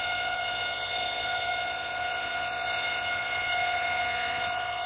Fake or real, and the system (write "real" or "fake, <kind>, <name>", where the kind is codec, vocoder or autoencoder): fake, vocoder, Vocos